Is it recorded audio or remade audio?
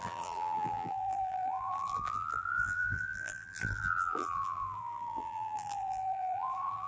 remade